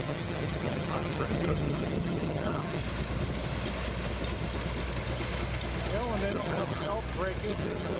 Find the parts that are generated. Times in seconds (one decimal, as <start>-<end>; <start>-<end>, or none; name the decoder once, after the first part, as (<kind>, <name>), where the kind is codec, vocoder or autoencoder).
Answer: 0.0-2.8 (vocoder, HiFi-GAN); 6.3-6.9; 7.5-8.0